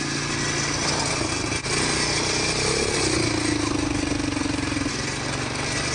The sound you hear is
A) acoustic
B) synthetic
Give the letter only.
A